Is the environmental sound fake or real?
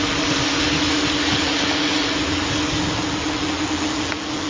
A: real